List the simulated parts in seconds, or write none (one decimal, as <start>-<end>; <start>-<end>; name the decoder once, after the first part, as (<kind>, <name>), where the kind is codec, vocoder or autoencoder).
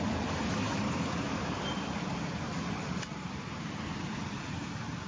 0.0-2.5 (vocoder, BigVGAN v2); 3.0-5.1